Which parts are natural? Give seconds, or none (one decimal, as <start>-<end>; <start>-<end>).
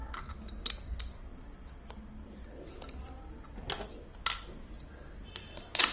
0.0-5.9